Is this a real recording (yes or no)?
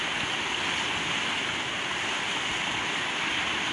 yes